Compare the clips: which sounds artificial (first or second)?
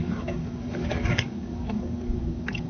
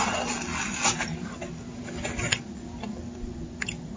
first